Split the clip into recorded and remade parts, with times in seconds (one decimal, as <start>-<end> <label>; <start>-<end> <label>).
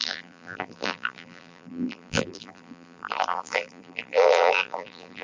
0.0-5.2 remade